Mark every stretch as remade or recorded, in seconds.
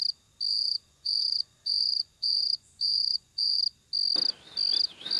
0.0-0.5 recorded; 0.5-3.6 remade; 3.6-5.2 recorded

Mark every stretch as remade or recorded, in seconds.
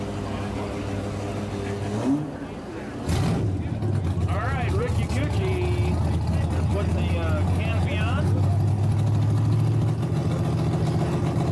0.0-11.5 recorded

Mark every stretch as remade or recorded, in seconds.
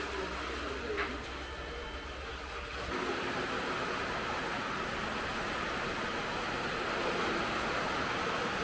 0.0-8.6 recorded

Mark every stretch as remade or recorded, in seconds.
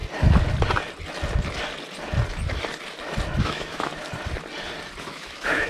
0.0-3.4 recorded; 3.4-3.9 remade; 3.9-5.0 recorded; 5.0-5.7 remade